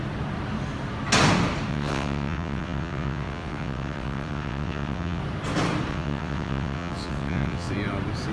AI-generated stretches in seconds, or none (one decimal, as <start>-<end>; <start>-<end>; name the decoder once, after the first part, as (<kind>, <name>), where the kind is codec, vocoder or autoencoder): 1.7-5.2 (vocoder, WaveNeXt); 5.9-7.7